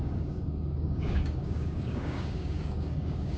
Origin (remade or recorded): remade